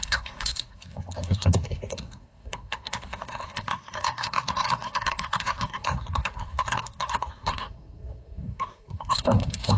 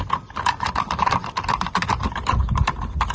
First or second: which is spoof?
first